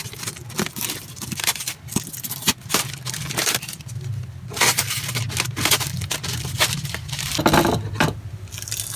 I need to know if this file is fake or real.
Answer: real